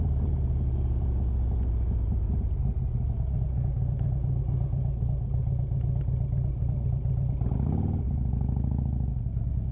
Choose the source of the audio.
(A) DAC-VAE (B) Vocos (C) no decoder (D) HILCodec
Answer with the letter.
C